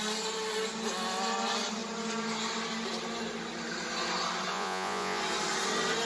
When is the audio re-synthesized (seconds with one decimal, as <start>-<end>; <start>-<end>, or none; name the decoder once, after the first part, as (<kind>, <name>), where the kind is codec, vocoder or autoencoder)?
4.5-5.2 (vocoder, Vocos)